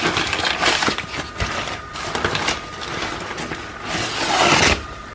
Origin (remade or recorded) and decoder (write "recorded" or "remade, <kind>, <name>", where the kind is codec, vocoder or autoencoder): recorded